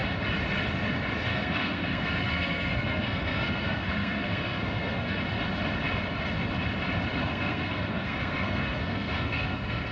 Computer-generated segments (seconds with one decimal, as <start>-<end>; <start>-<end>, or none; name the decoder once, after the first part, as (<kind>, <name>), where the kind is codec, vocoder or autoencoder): 1.3-5.2 (codec, SNAC); 7.2-9.9